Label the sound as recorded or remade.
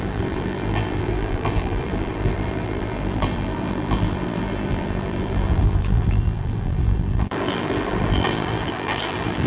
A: remade